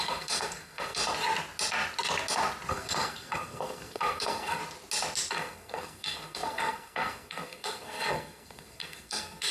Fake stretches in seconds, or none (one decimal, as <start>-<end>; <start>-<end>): 0.0-1.0; 2.7-4.6; 5.3-9.5